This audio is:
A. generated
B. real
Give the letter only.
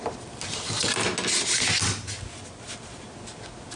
B